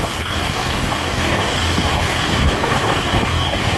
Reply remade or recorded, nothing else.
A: remade